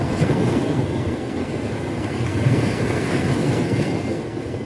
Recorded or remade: remade